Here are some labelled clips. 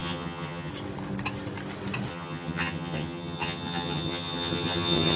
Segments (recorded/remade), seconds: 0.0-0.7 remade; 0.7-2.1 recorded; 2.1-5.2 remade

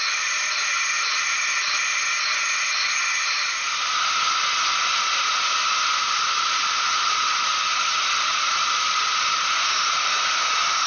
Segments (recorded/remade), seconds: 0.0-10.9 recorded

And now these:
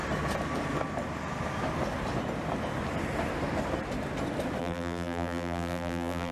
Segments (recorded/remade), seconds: 0.0-4.6 recorded; 4.6-6.3 remade

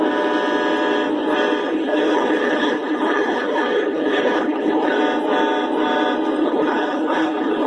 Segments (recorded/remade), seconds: 0.0-1.6 recorded; 1.6-5.0 remade; 5.0-6.4 recorded; 6.4-7.7 remade